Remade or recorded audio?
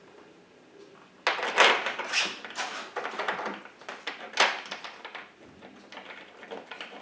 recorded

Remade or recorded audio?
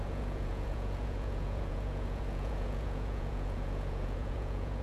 remade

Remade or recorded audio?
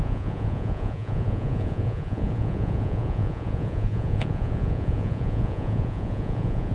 remade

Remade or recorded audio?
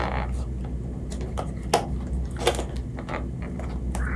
recorded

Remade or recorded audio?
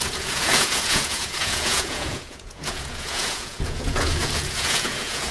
remade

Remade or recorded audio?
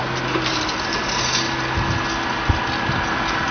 recorded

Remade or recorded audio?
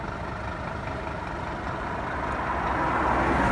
recorded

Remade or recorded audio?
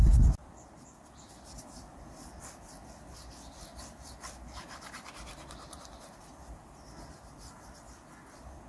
recorded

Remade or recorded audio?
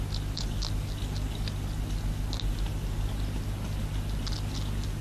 recorded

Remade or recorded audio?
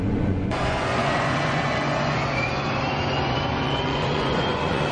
remade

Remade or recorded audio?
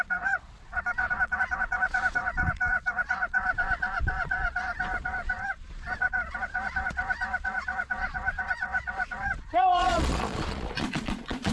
remade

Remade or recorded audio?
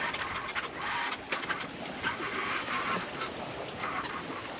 recorded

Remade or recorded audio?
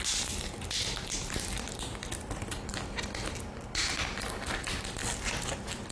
recorded